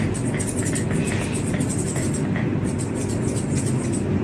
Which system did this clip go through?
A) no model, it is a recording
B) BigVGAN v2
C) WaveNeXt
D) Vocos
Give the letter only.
A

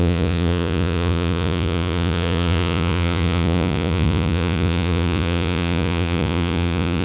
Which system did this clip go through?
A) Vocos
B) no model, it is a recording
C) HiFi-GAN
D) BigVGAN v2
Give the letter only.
A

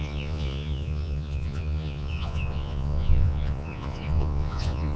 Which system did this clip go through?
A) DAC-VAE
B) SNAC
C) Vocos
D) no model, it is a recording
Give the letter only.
C